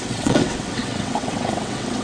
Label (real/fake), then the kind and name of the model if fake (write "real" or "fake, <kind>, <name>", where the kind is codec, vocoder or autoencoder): fake, vocoder, WaveNeXt